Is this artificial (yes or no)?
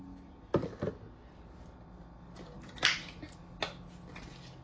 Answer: no